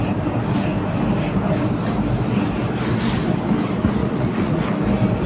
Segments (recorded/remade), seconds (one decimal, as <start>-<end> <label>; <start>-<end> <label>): 0.0-4.0 recorded; 4.0-4.6 remade; 4.6-5.3 recorded